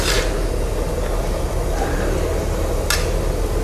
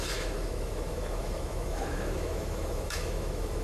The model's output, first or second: second